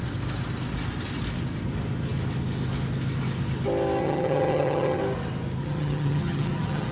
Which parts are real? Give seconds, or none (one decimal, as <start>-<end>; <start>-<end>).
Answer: 0.0-4.0; 5.0-5.6